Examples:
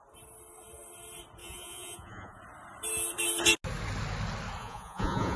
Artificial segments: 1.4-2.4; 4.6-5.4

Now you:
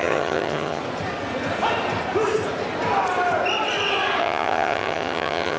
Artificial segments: 0.0-0.8; 4.2-5.6

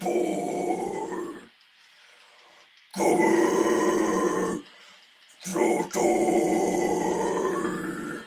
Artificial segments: 2.9-4.1

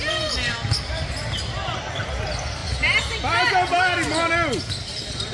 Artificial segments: none

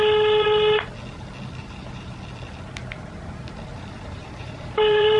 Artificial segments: 1.6-2.2; 3.7-5.2

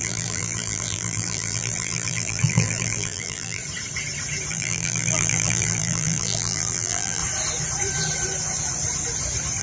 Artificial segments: 0.0-3.6; 4.5-7.2

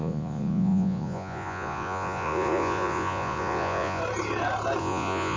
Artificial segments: 0.0-4.0; 4.8-5.4